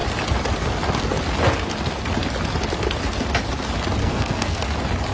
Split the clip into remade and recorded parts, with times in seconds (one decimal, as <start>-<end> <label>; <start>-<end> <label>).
0.0-4.0 recorded; 4.0-4.6 remade; 4.6-5.1 recorded